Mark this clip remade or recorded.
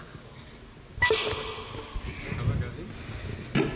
recorded